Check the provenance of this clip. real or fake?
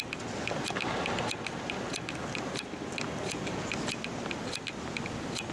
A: real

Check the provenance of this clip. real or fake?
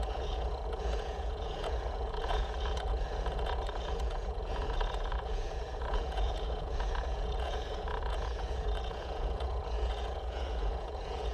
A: fake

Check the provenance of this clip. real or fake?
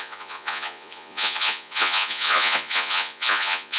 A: fake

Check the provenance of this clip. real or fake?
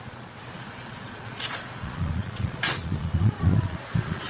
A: fake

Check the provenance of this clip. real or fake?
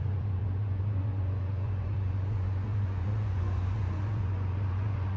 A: fake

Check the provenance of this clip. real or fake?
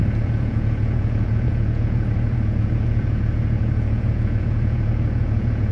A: fake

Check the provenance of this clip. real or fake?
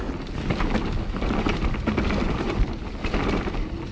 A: real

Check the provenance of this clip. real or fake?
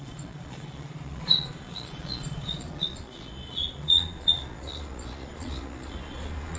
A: fake